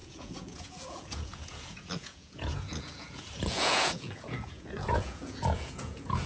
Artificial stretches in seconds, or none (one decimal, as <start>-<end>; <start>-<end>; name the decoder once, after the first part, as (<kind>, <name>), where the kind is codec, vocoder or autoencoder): 0.0-6.3 (vocoder, Vocos)